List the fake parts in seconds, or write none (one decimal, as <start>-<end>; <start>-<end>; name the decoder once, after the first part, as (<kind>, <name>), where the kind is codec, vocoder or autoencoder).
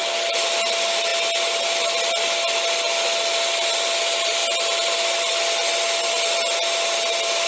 none